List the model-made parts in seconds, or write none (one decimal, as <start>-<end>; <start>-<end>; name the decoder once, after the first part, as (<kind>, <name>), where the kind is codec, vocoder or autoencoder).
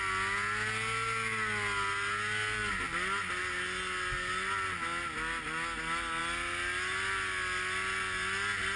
none